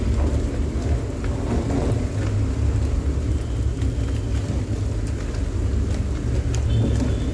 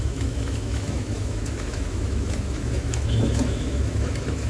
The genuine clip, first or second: first